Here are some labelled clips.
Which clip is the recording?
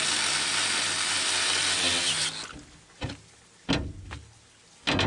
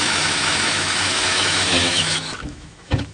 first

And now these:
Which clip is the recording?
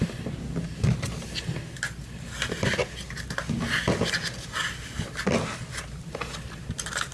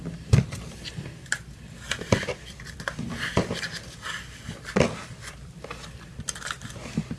first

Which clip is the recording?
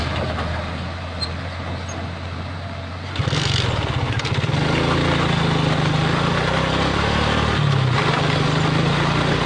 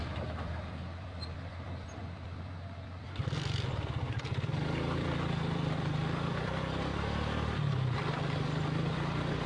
first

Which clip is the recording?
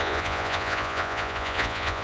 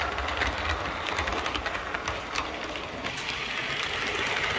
second